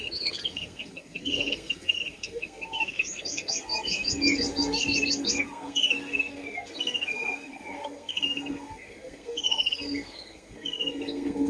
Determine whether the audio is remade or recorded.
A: remade